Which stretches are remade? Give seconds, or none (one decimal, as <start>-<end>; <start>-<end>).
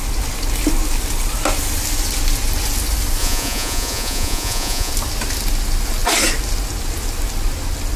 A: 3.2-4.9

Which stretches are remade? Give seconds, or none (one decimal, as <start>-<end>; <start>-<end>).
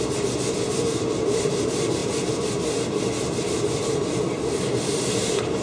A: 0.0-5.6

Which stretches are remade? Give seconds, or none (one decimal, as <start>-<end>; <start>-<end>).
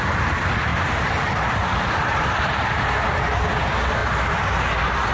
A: 0.7-2.4